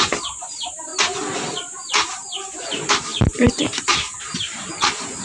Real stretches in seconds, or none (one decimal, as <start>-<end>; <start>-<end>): 0.9-1.5